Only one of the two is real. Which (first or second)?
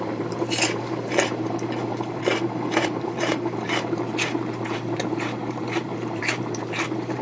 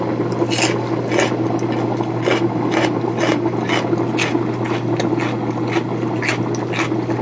second